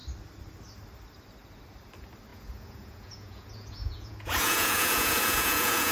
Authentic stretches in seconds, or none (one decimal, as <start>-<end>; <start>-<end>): 0.0-2.3